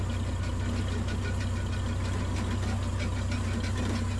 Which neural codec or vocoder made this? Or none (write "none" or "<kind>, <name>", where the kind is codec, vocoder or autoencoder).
none